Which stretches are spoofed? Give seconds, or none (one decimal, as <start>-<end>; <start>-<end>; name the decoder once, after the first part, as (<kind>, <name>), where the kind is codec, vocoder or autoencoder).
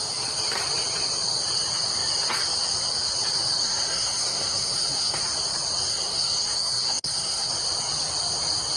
3.6-5.2 (codec, SNAC); 5.9-7.5